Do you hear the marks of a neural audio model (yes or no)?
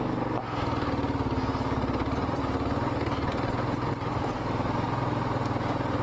no